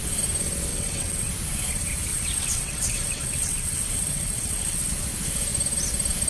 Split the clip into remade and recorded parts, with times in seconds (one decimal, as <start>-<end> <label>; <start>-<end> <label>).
0.0-0.7 recorded; 0.7-1.3 remade; 1.3-2.1 recorded; 2.1-4.9 remade; 4.9-6.3 recorded